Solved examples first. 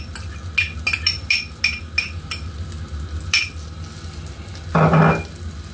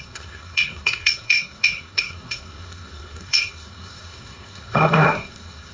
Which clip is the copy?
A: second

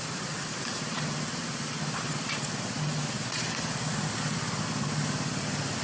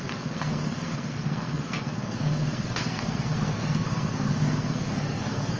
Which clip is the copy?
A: second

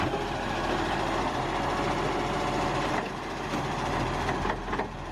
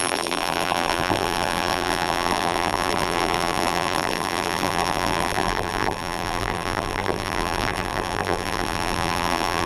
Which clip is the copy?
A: second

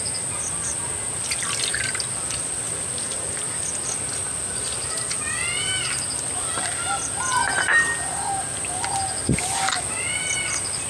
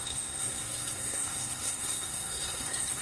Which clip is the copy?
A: second